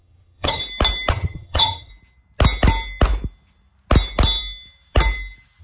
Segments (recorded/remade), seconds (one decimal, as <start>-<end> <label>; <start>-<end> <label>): 0.0-0.6 remade; 0.6-1.1 recorded; 1.1-1.9 remade; 1.9-5.6 recorded

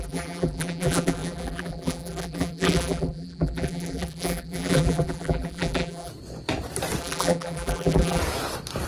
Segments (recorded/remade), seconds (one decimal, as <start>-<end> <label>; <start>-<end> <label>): 0.0-6.1 remade; 6.1-7.0 recorded; 7.0-8.2 remade; 8.2-8.9 recorded

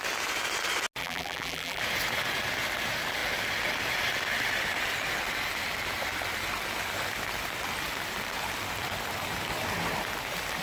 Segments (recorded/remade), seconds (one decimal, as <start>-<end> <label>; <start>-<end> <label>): 0.0-1.0 recorded; 1.0-1.8 remade; 1.8-10.6 recorded

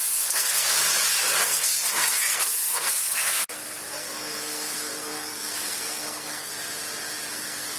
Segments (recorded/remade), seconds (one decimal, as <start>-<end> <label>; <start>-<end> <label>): 0.0-0.8 remade; 0.8-1.4 recorded; 1.4-6.5 remade; 6.5-7.3 recorded; 7.3-7.8 remade

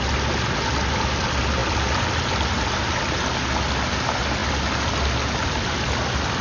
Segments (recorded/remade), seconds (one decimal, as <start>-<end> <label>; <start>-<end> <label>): 0.0-6.4 recorded

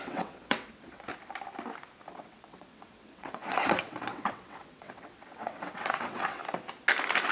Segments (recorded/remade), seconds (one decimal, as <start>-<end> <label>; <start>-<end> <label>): 0.0-1.1 remade; 1.1-2.1 recorded; 2.1-6.4 remade; 6.4-7.3 recorded

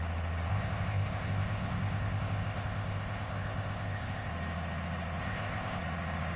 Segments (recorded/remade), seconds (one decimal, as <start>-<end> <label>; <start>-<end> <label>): 0.0-0.5 recorded; 0.5-4.3 remade; 4.3-5.2 recorded; 5.2-5.8 remade; 5.8-6.4 recorded